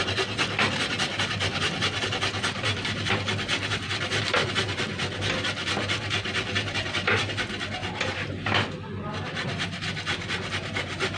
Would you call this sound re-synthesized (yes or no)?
no